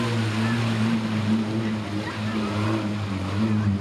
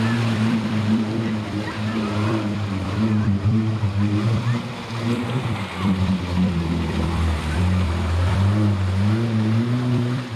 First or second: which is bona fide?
first